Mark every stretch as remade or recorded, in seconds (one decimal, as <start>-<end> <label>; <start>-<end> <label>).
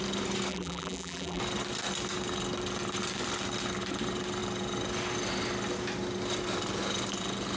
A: 0.0-0.5 recorded; 0.5-1.4 remade; 1.4-7.6 recorded